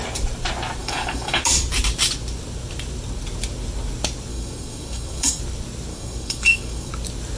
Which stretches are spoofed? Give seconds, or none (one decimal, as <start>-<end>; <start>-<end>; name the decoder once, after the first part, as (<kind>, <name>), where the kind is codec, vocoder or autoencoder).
0.8-1.4 (codec, DAC); 4.3-5.4; 5.9-6.9

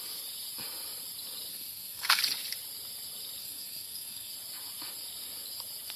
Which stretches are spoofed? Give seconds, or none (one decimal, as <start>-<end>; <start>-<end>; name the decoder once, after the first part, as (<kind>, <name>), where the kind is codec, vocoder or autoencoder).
1.5-2.2 (codec, SNAC); 3.4-4.3

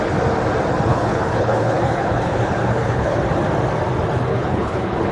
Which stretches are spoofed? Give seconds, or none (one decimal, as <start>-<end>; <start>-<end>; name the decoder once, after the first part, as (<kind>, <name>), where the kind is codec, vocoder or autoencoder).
0.9-3.2 (codec, HILCodec); 4.3-5.1

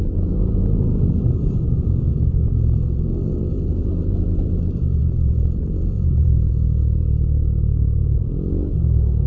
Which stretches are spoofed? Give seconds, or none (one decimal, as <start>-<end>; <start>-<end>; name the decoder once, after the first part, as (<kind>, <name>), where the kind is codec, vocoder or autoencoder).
1.4-2.1 (vocoder, BigVGAN v2); 5.0-8.2